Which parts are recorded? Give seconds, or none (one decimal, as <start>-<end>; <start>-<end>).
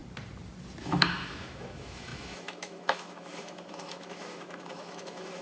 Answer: 0.0-0.8